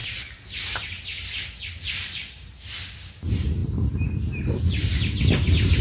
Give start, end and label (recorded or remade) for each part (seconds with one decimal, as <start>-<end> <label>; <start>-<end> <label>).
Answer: 0.0-5.8 recorded